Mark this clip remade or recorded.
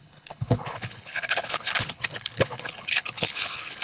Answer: remade